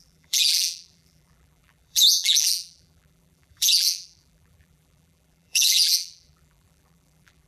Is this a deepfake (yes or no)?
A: yes